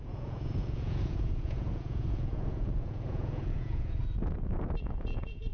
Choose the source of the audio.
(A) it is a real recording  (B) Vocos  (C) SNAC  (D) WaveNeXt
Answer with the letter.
B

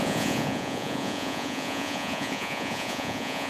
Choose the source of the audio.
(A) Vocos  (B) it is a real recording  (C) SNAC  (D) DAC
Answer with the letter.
A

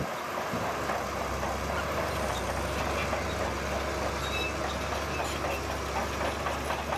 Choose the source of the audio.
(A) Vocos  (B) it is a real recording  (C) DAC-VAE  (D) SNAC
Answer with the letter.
B